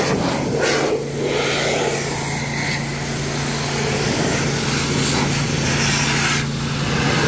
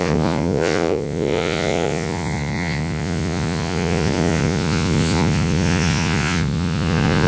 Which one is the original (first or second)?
first